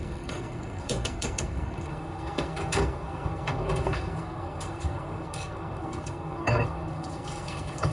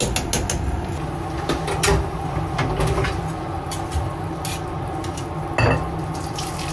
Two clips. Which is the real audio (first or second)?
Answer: second